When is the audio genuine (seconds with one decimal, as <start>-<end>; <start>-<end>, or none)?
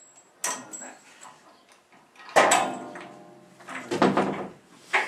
0.0-5.1